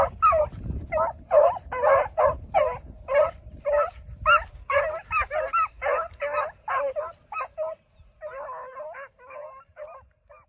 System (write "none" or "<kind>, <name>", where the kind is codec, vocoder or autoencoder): none